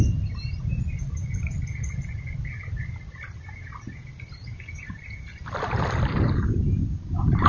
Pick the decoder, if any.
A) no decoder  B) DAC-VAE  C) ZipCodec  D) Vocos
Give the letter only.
A